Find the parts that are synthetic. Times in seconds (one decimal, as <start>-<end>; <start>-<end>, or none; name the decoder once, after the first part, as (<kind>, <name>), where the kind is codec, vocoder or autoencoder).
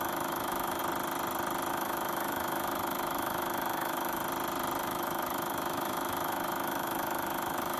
0.0-0.8 (autoencoder, DAC-VAE); 1.7-4.2; 4.8-7.8